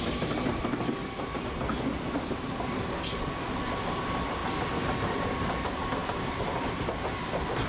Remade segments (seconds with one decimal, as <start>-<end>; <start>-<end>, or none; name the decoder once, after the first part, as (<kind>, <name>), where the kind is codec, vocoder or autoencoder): none